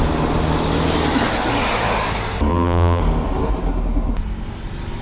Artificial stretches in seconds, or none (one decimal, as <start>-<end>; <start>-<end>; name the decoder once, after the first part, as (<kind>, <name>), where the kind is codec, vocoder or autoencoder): 2.5-3.0 (vocoder, BigVGAN v2)